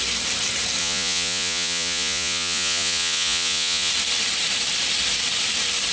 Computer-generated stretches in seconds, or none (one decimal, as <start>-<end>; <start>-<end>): 0.8-3.9